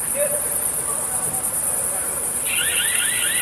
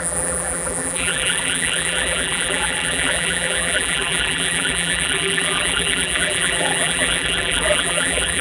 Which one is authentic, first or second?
first